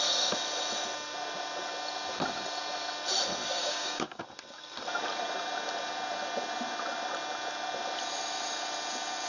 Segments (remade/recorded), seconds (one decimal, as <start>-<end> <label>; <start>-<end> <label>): 0.0-3.6 recorded; 3.6-4.2 remade; 4.2-9.3 recorded